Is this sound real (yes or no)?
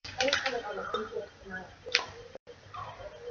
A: no